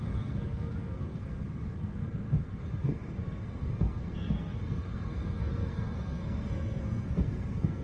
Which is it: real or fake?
fake